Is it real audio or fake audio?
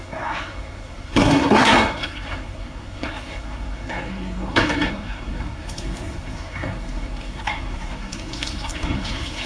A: fake